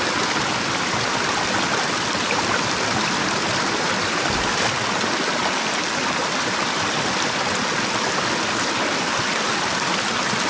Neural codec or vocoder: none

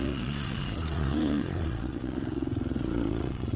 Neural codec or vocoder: vocoder, Vocos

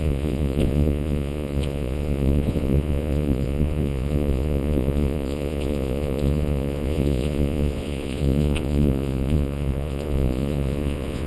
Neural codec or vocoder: vocoder, Vocos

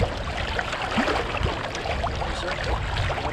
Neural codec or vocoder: none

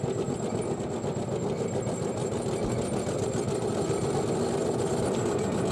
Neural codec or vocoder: none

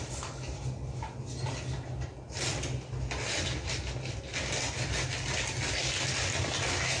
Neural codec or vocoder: none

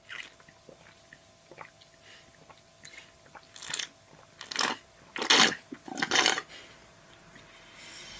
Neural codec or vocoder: none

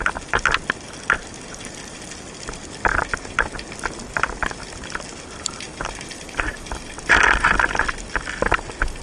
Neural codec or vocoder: none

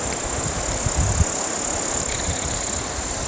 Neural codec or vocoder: none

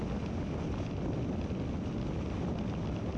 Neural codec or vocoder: none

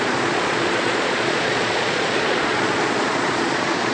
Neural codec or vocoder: vocoder, Vocos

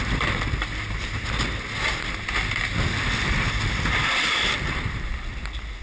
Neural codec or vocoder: none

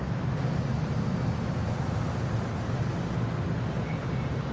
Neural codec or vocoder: none